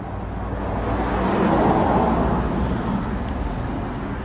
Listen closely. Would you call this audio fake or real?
real